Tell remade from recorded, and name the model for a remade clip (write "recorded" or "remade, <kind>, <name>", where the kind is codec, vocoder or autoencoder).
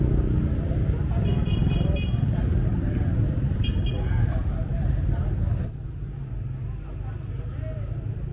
recorded